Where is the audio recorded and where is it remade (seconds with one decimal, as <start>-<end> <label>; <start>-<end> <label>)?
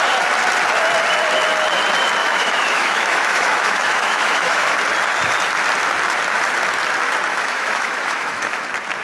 0.0-2.2 recorded; 2.2-4.7 remade; 4.7-7.3 recorded; 7.3-8.6 remade; 8.6-9.0 recorded